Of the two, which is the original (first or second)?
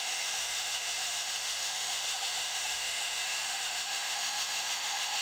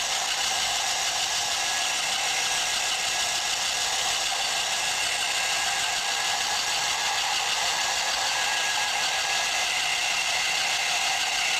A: second